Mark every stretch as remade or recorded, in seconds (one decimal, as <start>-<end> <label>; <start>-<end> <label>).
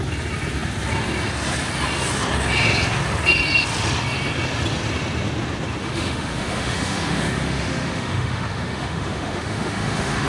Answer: 0.0-5.8 recorded; 5.8-10.3 remade